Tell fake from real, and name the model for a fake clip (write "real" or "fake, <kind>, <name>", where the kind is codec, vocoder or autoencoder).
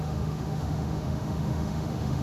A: fake, autoencoder, DAC-VAE